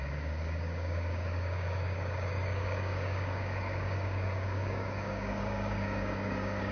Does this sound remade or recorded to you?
remade